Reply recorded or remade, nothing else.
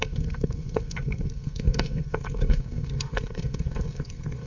remade